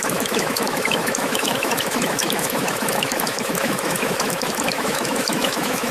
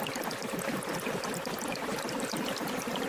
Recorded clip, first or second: second